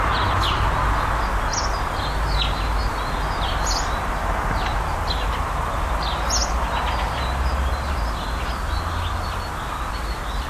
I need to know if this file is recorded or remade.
recorded